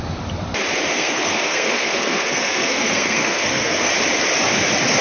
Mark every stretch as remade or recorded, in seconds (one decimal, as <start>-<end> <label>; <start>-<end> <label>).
0.0-0.9 recorded; 0.9-3.9 remade; 3.9-5.0 recorded